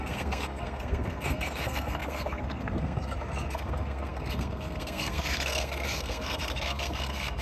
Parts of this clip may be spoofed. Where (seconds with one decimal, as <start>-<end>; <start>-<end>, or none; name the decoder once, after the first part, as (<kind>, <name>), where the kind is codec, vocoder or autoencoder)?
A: 0.0-7.4 (codec, SNAC)